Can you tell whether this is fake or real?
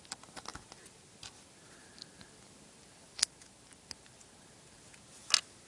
real